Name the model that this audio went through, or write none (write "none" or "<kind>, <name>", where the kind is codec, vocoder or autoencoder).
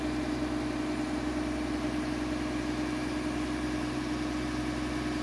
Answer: none